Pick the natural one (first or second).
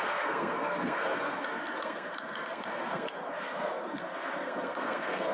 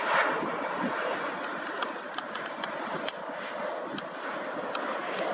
second